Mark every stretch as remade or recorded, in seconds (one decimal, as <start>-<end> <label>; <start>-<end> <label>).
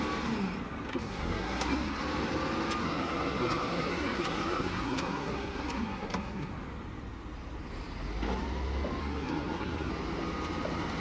0.0-0.9 recorded; 0.9-2.0 remade; 2.0-2.8 recorded; 2.8-6.5 remade; 6.5-9.0 recorded; 9.0-9.9 remade; 9.9-11.0 recorded